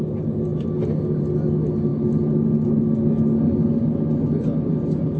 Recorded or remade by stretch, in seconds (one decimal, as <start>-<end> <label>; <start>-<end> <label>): 0.0-5.2 recorded